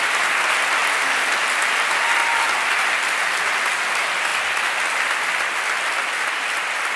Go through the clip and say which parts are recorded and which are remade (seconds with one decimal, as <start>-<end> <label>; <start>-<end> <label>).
0.0-7.0 recorded